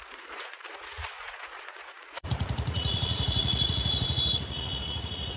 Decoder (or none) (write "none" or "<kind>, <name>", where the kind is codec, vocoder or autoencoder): vocoder, Vocos